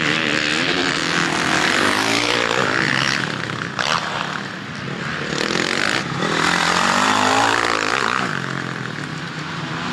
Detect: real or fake real